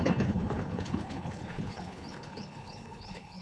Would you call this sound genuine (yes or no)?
no